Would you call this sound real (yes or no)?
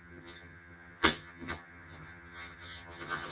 no